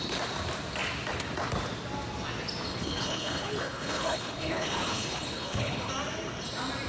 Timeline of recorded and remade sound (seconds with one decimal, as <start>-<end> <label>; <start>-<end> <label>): 0.0-2.7 recorded; 2.7-5.9 remade; 5.9-6.9 recorded